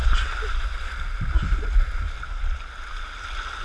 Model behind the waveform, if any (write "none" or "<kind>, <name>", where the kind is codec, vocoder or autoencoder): none